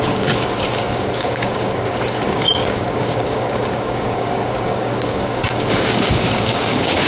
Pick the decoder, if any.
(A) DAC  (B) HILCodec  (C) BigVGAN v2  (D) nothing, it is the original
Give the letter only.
A